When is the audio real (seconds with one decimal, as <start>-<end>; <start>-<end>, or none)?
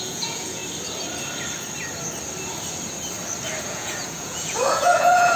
0.6-3.6